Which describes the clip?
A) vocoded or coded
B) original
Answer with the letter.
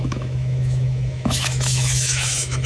A